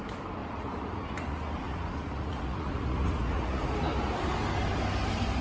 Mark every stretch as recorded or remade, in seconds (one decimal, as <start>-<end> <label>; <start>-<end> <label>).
0.0-0.4 recorded; 0.4-3.6 remade; 3.6-5.4 recorded